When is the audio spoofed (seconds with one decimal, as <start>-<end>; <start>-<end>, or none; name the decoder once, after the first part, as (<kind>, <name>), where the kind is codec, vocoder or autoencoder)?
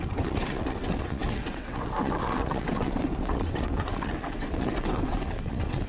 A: 0.0-5.9 (vocoder, WaveNeXt)